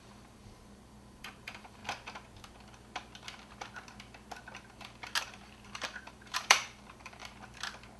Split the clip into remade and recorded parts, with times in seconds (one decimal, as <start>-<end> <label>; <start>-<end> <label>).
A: 0.0-1.8 remade; 1.8-5.2 recorded; 5.2-7.2 remade; 7.2-8.0 recorded